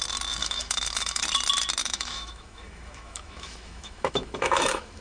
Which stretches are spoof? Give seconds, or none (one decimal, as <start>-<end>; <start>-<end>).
0.4-1.2; 1.8-5.0